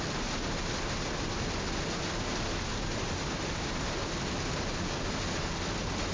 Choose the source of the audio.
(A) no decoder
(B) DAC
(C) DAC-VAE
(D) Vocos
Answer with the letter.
A